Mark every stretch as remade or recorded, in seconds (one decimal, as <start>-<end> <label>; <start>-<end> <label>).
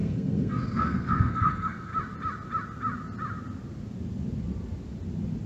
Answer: 0.0-1.9 remade; 1.9-5.5 recorded